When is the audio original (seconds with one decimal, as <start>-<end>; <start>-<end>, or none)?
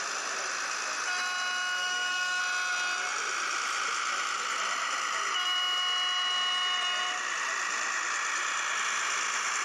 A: 0.0-1.8; 2.4-9.6